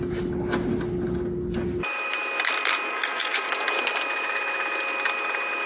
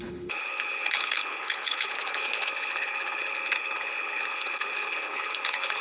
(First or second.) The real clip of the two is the first